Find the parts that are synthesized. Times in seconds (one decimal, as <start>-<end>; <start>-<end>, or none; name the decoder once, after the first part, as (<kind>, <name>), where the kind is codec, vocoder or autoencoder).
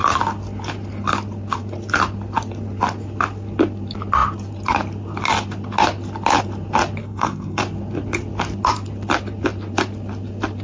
7.0-7.6 (codec, SNAC)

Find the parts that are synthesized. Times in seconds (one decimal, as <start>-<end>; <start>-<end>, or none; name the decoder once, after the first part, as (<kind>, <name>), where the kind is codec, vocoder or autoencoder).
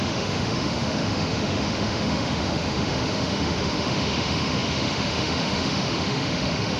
0.0-6.8 (autoencoder, DAC-VAE)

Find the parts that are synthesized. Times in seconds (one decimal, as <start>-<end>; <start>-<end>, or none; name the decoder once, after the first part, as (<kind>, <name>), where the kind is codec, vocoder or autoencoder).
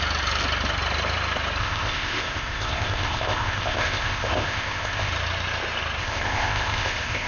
1.6-5.1 (codec, ZipCodec); 6.0-7.3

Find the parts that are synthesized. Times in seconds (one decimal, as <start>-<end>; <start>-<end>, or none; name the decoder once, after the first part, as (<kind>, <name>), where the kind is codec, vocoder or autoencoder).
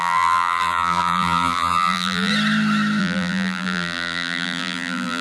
0.0-2.3 (vocoder, BigVGAN v2); 3.0-5.2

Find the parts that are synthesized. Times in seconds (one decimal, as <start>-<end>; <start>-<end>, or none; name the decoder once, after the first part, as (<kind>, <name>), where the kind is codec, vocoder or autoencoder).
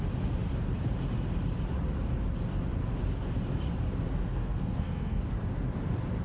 4.3-5.2 (codec, SNAC)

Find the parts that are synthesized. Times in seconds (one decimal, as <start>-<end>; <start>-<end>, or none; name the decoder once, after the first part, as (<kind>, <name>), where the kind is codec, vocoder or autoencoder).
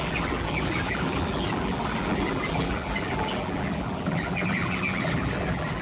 0.0-5.8 (vocoder, BigVGAN v2)